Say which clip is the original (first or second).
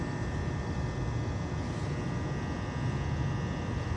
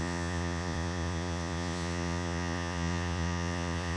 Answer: first